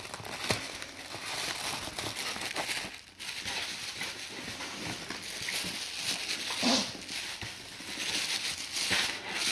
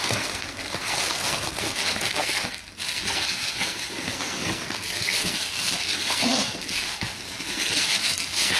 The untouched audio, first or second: first